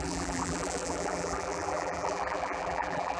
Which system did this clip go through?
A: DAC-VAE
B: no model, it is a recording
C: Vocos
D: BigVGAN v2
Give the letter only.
D